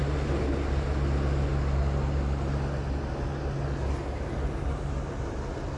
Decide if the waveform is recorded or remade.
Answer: recorded